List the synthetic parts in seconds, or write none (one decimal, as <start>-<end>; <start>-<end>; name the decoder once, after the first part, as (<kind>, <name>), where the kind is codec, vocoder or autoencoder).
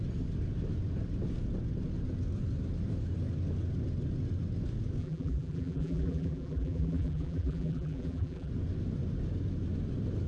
5.0-8.5 (vocoder, BigVGAN v2)